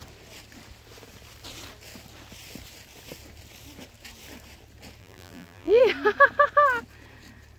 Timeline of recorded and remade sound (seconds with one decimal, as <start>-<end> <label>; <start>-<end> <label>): 0.0-5.0 recorded; 5.0-5.8 remade; 5.8-7.6 recorded